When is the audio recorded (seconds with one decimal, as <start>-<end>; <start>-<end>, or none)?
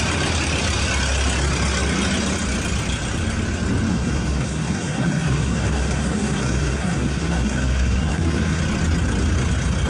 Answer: 0.0-3.9; 8.6-9.9